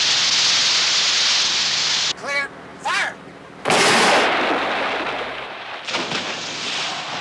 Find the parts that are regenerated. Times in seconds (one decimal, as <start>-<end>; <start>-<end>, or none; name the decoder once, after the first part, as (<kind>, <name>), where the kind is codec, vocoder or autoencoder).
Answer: none